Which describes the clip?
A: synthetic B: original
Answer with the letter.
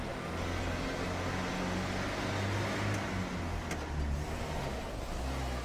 B